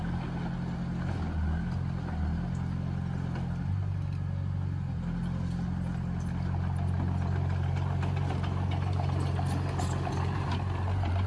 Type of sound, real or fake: real